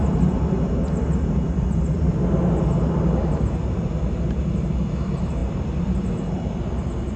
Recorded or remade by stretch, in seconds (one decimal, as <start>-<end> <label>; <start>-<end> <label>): 0.0-5.4 recorded; 5.4-7.2 remade